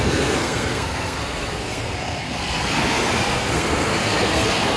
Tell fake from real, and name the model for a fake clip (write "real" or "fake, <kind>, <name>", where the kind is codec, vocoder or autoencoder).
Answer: fake, codec, SNAC